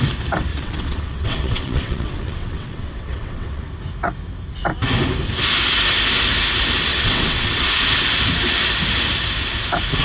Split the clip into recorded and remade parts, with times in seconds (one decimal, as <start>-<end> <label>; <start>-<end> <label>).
0.0-0.5 recorded; 0.5-3.6 remade; 3.6-6.9 recorded; 6.9-7.7 remade; 7.7-10.0 recorded